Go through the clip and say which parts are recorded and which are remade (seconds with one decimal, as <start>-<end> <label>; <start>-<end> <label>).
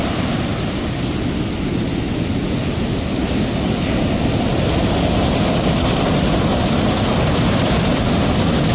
0.0-8.7 recorded